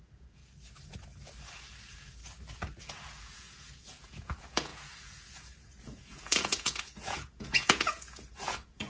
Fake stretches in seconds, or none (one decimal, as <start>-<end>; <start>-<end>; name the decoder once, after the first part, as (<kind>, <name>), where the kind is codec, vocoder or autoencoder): 0.0-0.4 (vocoder, Vocos); 1.8-2.2; 2.8-8.9